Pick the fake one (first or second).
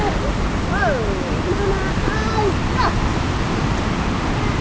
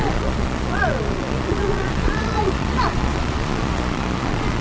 second